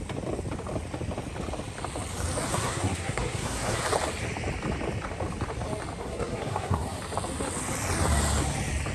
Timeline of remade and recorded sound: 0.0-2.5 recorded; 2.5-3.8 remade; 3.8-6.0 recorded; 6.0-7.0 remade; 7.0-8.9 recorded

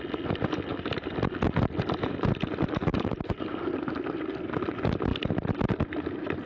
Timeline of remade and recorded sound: 0.0-2.9 recorded; 2.9-3.7 remade; 3.7-6.5 recorded

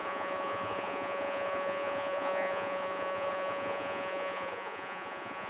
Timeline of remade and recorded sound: 0.0-5.5 remade

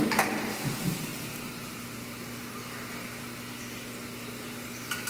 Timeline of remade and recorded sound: 0.0-5.1 recorded

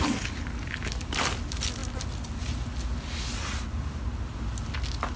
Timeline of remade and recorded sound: 0.0-5.2 recorded

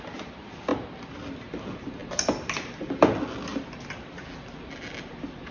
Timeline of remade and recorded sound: 0.0-5.5 recorded

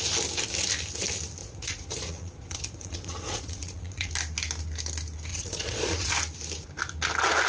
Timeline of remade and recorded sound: 0.0-1.4 recorded; 1.4-4.1 remade; 4.1-5.3 recorded; 5.3-6.1 remade; 6.1-7.5 recorded